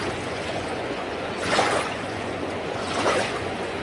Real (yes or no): no